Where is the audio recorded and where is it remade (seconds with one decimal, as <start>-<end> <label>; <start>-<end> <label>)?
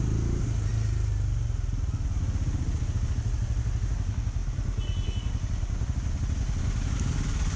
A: 0.0-7.6 recorded